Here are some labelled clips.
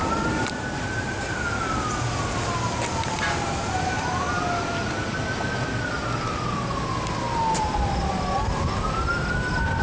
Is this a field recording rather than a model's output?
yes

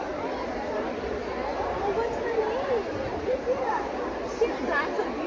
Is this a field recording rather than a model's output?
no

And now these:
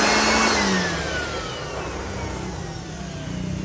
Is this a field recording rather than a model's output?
yes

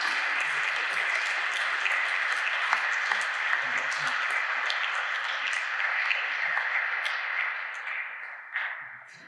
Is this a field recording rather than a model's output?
yes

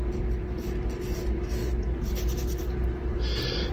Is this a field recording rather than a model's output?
yes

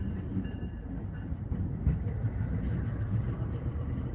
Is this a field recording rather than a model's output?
yes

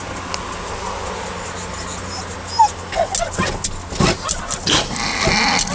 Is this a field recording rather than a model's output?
yes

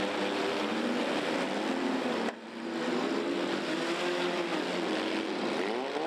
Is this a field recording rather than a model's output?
yes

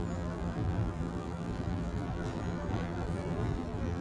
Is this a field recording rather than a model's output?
no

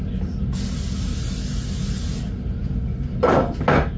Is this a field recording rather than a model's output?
yes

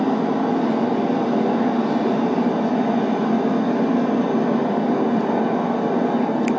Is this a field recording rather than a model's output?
yes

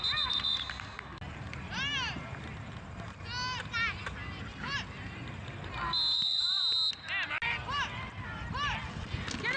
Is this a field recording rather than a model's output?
yes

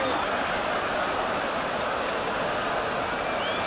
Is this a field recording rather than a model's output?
yes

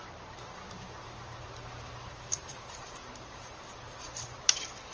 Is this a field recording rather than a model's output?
no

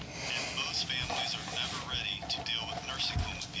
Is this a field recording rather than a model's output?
yes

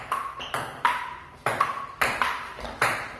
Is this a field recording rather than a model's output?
no